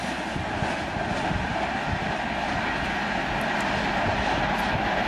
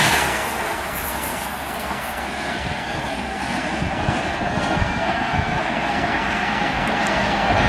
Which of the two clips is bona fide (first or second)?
first